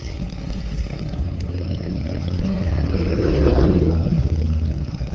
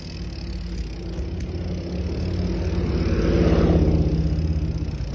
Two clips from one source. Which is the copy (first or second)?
first